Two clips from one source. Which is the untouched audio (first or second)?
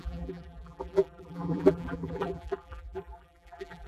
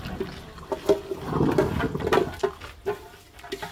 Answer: second